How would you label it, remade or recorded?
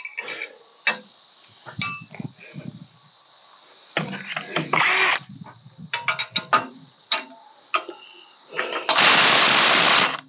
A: recorded